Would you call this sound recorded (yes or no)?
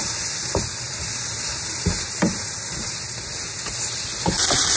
no